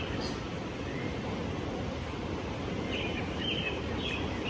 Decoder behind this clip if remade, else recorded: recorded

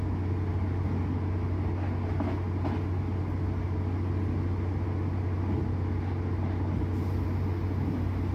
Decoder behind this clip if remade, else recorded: recorded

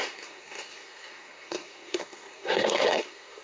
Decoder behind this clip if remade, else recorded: remade, codec, SNAC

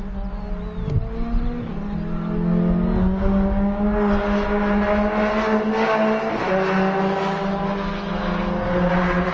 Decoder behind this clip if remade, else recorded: recorded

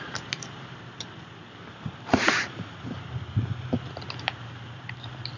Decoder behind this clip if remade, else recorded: remade, vocoder, BigVGAN v2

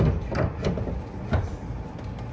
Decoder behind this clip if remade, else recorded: recorded